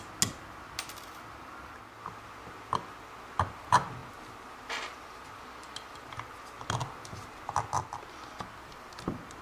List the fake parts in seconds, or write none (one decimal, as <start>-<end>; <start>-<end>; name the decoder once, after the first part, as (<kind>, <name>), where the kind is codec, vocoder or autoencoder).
none